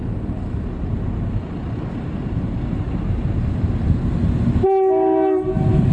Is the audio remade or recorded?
recorded